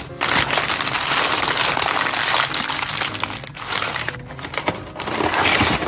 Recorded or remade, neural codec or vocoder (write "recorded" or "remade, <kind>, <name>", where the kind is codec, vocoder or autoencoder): recorded